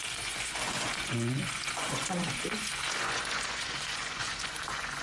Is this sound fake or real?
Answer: fake